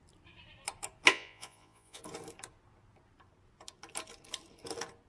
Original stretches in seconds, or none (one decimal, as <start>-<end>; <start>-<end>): 0.0-1.1; 2.0-5.1

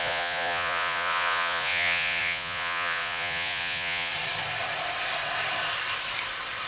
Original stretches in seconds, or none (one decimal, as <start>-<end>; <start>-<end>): 4.1-6.7

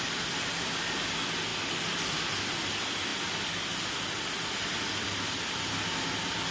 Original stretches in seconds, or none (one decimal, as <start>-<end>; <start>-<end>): 0.0-6.5

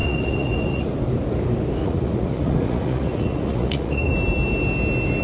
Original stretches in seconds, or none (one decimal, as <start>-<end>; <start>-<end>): 0.9-1.8; 4.1-5.2

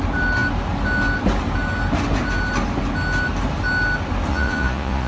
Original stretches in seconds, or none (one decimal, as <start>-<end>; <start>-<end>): 0.0-4.3

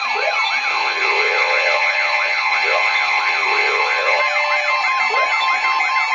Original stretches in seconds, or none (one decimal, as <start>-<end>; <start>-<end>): 0.0-0.7; 4.2-6.1

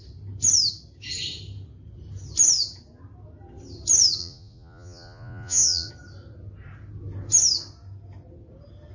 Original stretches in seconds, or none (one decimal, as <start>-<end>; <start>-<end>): 0.0-4.2; 5.9-8.9